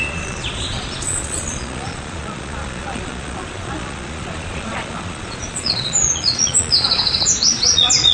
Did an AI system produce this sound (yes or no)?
yes